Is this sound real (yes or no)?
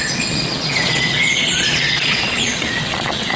no